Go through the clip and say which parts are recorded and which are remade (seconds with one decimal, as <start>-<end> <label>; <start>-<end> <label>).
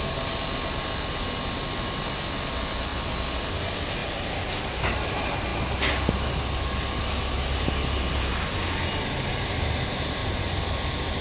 0.0-11.2 recorded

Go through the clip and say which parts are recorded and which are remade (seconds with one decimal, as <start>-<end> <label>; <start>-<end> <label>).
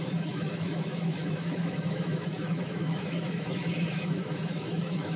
0.0-5.2 remade